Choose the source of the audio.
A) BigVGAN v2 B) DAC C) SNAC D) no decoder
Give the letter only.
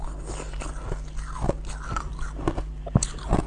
D